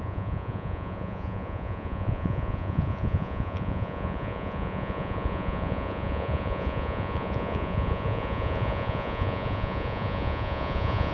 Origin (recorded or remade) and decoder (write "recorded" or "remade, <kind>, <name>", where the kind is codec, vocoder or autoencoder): remade, vocoder, Vocos